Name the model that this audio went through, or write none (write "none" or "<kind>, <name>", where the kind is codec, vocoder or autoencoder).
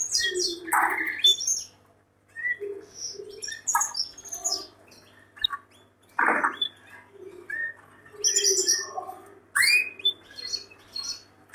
none